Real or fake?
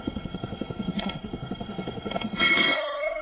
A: fake